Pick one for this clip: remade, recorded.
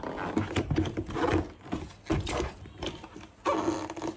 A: recorded